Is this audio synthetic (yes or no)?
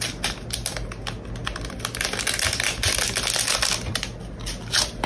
no